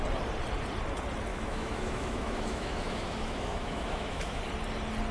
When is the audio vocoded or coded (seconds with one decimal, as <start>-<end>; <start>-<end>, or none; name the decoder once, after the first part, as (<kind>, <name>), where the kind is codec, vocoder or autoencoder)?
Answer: 1.3-4.4 (autoencoder, DAC-VAE)